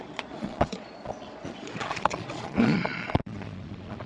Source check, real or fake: fake